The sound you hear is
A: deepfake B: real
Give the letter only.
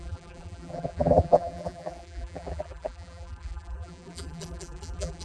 A